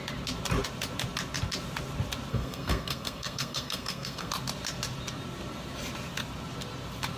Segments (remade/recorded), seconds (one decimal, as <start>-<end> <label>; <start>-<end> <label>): 0.0-2.3 recorded; 2.3-4.3 remade; 4.3-7.2 recorded